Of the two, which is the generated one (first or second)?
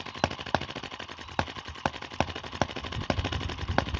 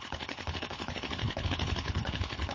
second